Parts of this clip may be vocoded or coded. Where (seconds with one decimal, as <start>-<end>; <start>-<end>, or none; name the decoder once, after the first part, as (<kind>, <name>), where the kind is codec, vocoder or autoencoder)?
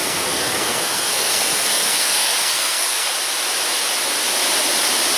0.0-3.1 (codec, SNAC)